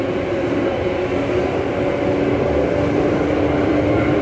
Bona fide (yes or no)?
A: yes